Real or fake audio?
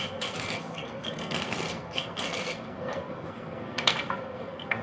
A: fake